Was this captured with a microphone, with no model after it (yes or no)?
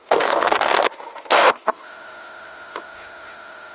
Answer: no